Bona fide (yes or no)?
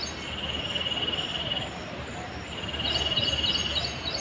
yes